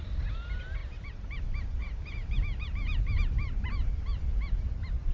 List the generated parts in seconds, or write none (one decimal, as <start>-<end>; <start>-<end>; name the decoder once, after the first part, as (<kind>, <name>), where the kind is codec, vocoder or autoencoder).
0.8-1.4 (vocoder, BigVGAN v2); 1.8-4.4